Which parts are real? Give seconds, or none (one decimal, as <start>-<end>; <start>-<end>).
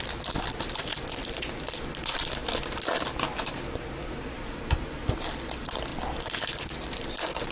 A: 2.4-3.3